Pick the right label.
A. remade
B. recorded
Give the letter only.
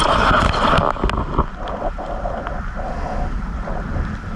B